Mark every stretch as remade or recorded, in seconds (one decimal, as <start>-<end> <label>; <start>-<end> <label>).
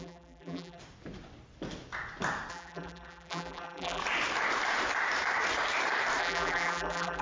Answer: 0.0-0.8 remade; 0.8-2.5 recorded; 2.5-4.0 remade; 4.0-6.2 recorded; 6.2-7.2 remade